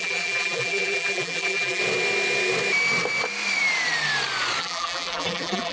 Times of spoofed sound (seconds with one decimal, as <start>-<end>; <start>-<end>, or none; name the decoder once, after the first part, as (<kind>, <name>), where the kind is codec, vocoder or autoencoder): 0.0-1.8 (vocoder, BigVGAN v2); 4.6-5.7